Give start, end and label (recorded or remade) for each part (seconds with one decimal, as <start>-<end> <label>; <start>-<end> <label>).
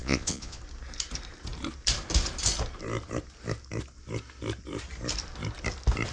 0.0-0.6 remade; 0.6-6.1 recorded